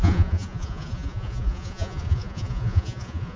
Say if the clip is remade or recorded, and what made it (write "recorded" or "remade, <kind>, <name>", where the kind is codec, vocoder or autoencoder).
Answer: remade, vocoder, Vocos